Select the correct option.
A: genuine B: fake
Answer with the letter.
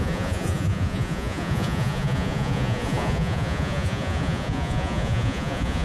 B